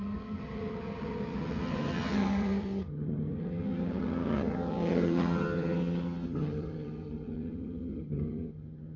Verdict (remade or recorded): remade